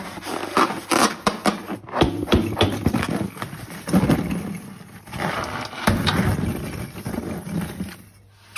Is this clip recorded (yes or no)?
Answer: yes